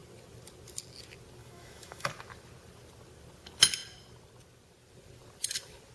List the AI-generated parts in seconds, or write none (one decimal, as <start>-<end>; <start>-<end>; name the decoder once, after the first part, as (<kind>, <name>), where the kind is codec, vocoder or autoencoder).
1.4-2.1 (autoencoder, DAC-VAE)